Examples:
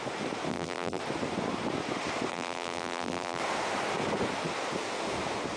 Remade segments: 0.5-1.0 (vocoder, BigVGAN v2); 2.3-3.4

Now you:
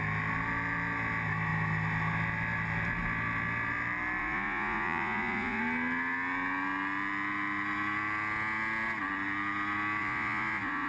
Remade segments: 4.2-5.6 (vocoder, Vocos); 10.0-10.9